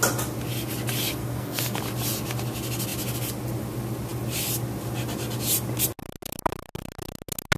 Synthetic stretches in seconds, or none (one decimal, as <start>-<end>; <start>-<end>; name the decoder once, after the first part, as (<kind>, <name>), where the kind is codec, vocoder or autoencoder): 1.2-1.8 (codec, SNAC)